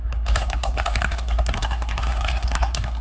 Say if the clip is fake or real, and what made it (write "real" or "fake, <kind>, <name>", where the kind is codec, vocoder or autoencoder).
fake, codec, SNAC